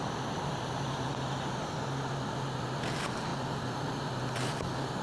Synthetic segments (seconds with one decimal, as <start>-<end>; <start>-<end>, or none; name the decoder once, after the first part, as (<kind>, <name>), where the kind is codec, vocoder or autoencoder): none